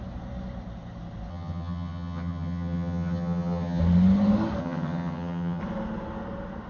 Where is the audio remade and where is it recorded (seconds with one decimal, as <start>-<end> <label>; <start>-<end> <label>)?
0.0-1.3 recorded; 1.3-3.8 remade; 3.8-4.6 recorded; 4.6-5.6 remade; 5.6-6.7 recorded